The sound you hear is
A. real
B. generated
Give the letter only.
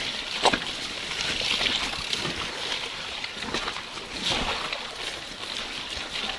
A